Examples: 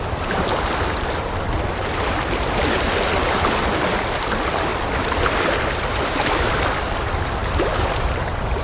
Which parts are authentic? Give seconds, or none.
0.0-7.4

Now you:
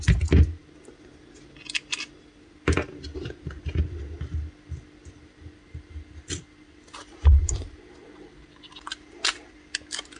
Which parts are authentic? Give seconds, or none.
0.0-7.4; 7.9-10.2

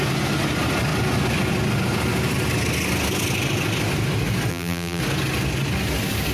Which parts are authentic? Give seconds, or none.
0.0-4.5; 5.0-6.3

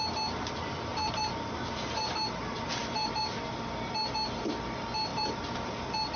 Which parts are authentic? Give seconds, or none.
0.0-0.9; 2.0-2.4; 3.2-5.1; 5.7-6.2

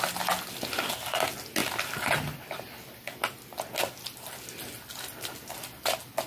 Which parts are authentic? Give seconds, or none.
0.0-6.3